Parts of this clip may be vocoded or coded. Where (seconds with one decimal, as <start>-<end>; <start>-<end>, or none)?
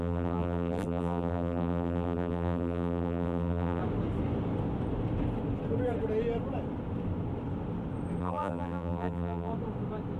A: 0.0-3.8; 8.2-9.5